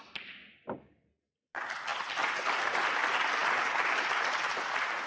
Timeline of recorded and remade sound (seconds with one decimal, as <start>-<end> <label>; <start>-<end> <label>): 0.0-5.1 recorded